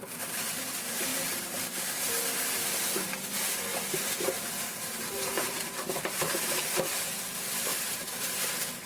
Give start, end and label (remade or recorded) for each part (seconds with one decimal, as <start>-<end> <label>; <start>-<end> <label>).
0.0-1.1 recorded; 1.1-1.7 remade; 1.7-3.7 recorded; 3.7-6.8 remade; 6.8-7.7 recorded; 7.7-8.5 remade; 8.5-8.9 recorded